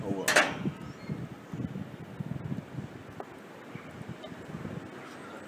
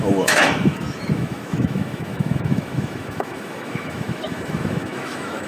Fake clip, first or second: second